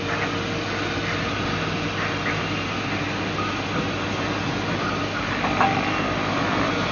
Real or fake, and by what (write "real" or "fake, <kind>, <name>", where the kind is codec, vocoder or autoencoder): real